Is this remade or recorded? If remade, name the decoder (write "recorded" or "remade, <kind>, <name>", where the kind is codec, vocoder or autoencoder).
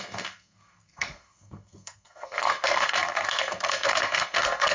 remade, codec, SNAC